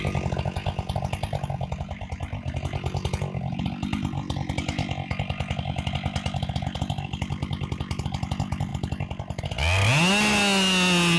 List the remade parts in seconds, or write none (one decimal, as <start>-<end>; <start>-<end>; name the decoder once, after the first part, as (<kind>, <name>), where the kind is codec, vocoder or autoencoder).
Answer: none